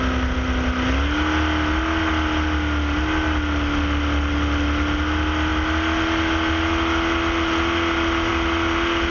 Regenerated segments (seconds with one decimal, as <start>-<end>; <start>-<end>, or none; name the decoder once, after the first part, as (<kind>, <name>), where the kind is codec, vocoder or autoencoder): none